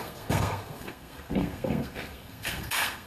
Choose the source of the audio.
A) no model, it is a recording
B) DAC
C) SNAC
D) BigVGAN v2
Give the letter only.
C